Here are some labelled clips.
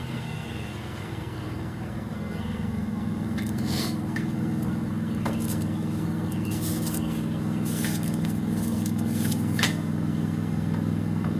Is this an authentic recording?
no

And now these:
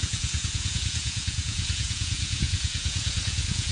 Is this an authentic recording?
no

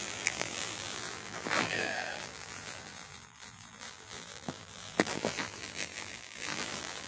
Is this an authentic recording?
no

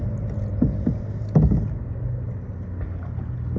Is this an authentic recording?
yes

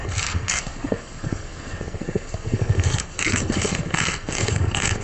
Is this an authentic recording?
no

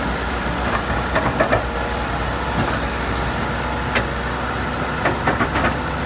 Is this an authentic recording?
yes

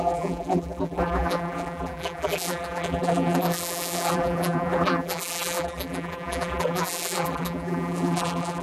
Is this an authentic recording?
no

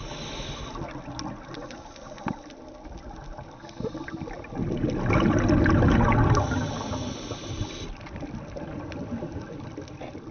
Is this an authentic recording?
yes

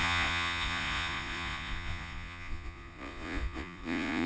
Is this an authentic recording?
no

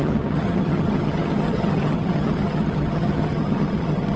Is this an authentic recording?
no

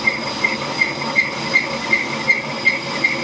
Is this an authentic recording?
yes